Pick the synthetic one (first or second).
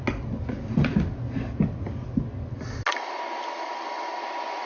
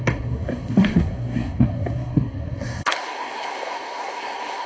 second